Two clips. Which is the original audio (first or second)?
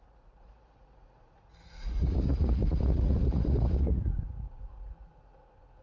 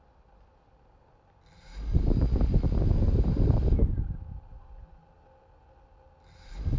second